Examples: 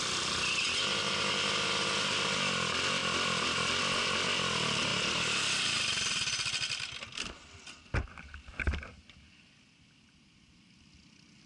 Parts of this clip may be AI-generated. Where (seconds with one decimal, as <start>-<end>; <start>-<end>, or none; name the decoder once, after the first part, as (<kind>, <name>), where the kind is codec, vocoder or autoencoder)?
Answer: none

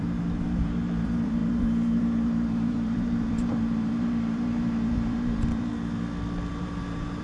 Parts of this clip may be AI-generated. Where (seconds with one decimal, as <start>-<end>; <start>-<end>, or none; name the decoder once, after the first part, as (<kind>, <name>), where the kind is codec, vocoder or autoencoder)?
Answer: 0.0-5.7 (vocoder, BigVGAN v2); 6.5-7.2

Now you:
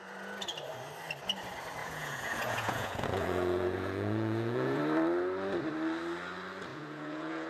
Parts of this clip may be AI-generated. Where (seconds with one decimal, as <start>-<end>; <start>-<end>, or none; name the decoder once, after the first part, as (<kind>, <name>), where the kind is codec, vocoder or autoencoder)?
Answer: 1.8-4.8 (vocoder, Vocos); 6.7-7.5

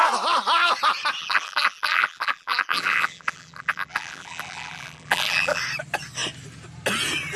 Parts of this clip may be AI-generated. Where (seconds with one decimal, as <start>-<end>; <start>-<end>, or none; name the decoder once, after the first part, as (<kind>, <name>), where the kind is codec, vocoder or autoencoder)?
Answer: 1.2-5.6 (vocoder, BigVGAN v2)